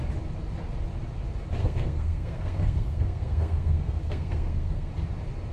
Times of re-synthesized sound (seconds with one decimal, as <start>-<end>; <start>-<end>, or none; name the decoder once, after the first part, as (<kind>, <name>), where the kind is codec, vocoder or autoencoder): 1.6-4.9 (codec, SNAC)